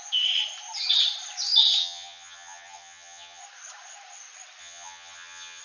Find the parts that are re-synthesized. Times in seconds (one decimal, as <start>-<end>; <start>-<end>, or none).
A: 1.8-3.4; 4.6-5.6